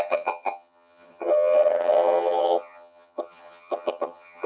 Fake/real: fake